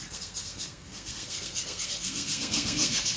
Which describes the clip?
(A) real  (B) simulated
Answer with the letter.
B